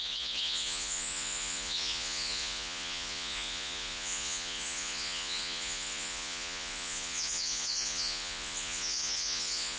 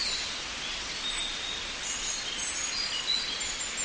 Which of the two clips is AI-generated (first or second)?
first